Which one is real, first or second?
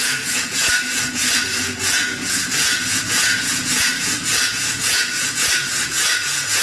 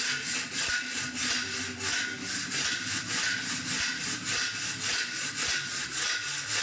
second